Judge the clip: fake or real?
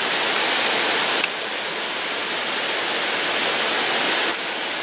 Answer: real